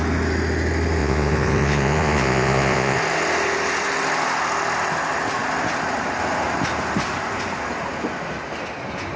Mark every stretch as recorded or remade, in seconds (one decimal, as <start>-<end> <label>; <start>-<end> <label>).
0.0-1.0 recorded; 1.0-3.0 remade; 3.0-9.2 recorded

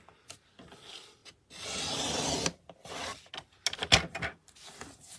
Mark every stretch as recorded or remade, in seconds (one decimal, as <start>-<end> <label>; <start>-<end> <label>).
0.0-5.2 recorded

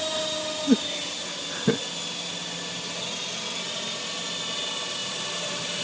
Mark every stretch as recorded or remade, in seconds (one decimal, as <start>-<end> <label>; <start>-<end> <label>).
0.0-5.0 recorded; 5.0-5.8 remade

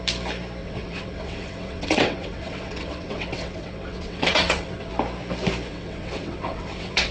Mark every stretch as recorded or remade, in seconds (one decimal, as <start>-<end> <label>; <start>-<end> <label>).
0.0-0.6 recorded; 0.6-4.9 remade; 4.9-5.7 recorded; 5.7-7.1 remade

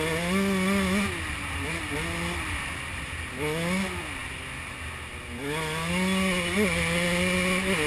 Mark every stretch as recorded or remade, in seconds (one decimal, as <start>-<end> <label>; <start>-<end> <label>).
0.0-7.9 recorded

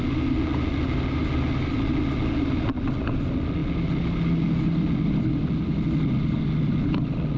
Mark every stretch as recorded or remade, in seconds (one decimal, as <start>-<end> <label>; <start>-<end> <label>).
0.0-7.4 recorded